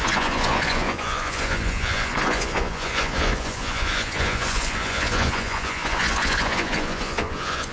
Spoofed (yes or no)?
yes